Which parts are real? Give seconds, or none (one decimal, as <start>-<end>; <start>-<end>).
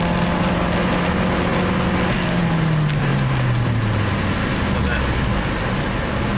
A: 0.0-6.4